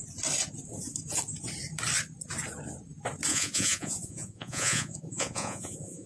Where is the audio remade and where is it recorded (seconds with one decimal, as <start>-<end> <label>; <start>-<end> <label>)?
0.0-3.3 recorded; 3.3-6.1 remade